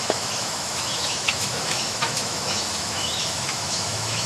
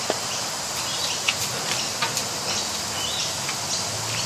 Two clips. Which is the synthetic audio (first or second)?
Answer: first